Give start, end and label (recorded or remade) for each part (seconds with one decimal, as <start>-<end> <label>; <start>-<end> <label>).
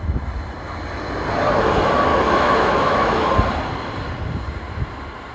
0.0-2.1 recorded; 2.1-3.3 remade; 3.3-5.3 recorded